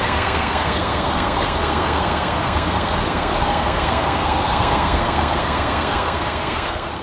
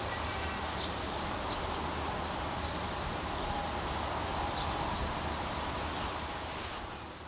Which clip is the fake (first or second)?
first